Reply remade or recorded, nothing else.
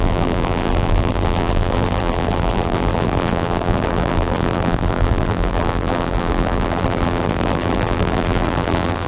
remade